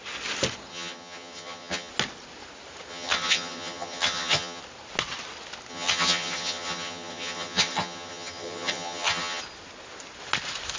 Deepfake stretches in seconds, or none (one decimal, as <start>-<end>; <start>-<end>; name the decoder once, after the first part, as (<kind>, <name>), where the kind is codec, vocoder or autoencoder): 0.7-1.9 (vocoder, HiFi-GAN); 2.9-4.6; 5.7-9.4